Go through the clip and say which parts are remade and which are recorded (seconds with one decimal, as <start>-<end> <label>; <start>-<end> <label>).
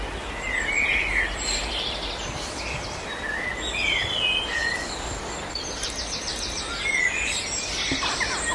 0.0-8.5 recorded